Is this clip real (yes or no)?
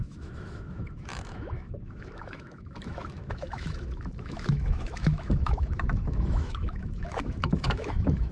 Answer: no